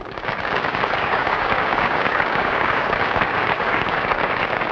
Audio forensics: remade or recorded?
remade